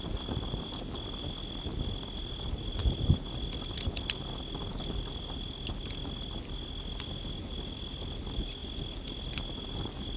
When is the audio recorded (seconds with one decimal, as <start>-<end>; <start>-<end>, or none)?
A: 0.0-10.2

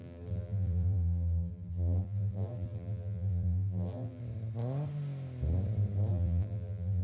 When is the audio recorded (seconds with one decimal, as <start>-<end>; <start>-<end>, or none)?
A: 4.2-6.1

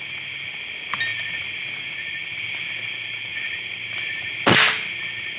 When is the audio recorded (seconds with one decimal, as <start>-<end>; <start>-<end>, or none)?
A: 0.0-5.4

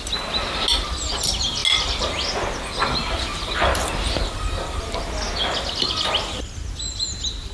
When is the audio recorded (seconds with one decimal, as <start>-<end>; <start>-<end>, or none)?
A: 0.0-3.3; 4.9-7.5

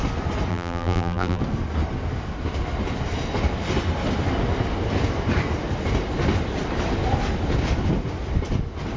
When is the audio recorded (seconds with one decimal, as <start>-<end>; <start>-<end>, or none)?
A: 0.0-0.5; 1.4-9.0